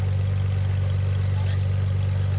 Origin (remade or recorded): recorded